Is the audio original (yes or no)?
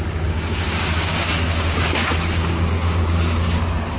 no